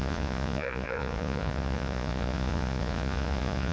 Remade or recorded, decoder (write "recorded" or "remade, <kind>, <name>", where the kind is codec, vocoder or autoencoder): remade, vocoder, Vocos